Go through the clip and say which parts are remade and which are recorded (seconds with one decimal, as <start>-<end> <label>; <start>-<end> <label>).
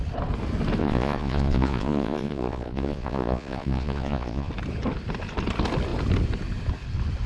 0.0-0.8 recorded; 0.8-4.5 remade; 4.5-7.3 recorded